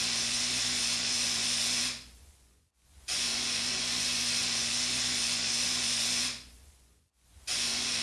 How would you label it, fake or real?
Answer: fake